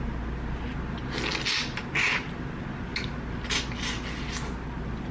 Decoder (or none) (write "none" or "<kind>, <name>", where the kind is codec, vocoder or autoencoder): none